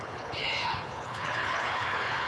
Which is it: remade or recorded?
remade